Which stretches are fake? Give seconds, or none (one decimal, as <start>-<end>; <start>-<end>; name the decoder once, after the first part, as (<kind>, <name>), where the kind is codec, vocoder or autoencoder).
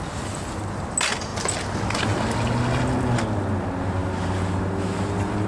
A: none